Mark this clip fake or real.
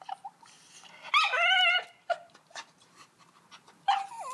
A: real